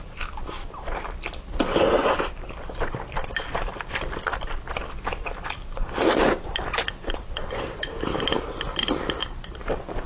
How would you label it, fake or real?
fake